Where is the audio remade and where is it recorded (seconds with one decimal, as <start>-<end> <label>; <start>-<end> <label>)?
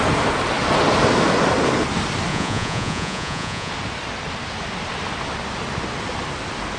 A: 0.0-2.3 recorded; 2.3-3.7 remade; 3.7-6.8 recorded